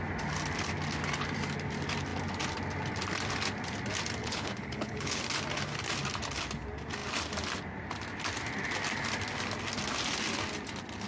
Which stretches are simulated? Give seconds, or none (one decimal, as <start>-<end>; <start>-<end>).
4.2-5.2